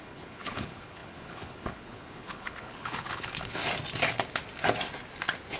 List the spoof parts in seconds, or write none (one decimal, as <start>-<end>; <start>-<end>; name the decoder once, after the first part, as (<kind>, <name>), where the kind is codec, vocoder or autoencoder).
0.0-3.6 (codec, HILCodec)